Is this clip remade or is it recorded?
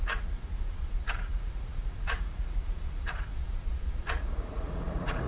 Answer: remade